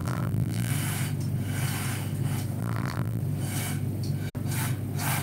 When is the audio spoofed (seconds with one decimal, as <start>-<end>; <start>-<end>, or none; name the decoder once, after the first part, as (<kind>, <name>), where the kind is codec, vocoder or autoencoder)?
0.0-0.7 (vocoder, BigVGAN v2); 2.6-3.2